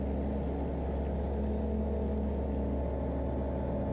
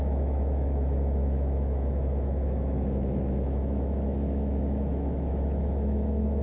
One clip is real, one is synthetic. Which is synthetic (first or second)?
second